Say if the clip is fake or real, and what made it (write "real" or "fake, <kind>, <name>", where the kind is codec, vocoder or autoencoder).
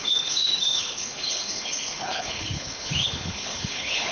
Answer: fake, codec, HILCodec